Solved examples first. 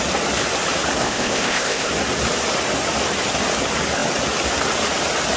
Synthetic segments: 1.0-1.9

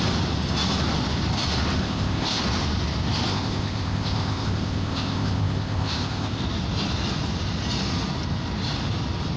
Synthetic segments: 1.8-2.4; 3.3-6.4

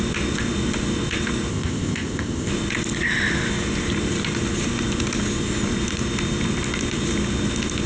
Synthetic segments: 1.5-2.5